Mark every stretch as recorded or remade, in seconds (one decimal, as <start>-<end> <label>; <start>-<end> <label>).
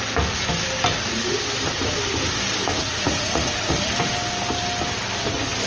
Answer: 0.0-2.7 recorded; 2.7-3.7 remade; 3.7-5.7 recorded